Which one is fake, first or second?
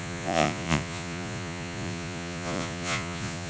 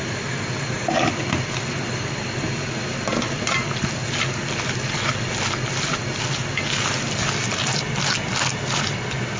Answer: first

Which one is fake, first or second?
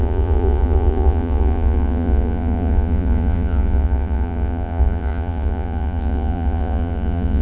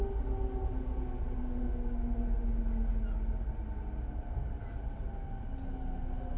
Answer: first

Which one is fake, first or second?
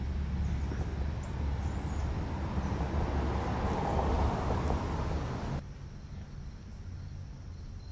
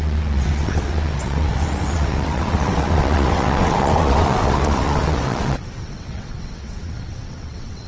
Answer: second